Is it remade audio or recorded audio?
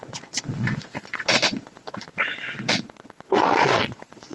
remade